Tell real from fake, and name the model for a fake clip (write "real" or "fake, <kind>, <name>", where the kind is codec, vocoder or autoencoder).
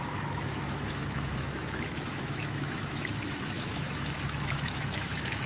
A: fake, autoencoder, DAC-VAE